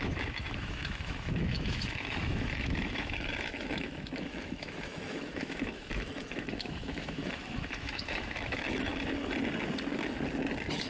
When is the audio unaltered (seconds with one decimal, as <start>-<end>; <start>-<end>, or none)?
8.9-10.9